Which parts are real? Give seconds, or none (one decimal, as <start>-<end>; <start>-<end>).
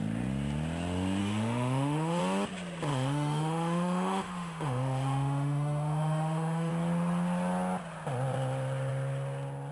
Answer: 0.0-1.2; 2.2-2.9; 6.7-9.7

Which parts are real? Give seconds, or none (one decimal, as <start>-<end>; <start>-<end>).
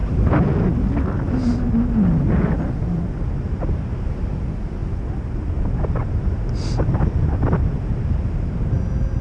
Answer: 0.0-9.2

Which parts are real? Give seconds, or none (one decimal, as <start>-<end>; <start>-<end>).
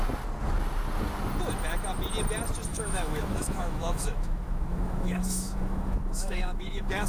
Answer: 0.0-2.7